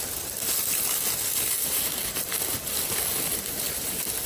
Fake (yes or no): no